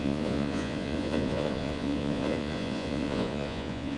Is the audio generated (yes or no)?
yes